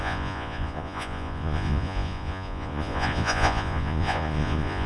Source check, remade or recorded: remade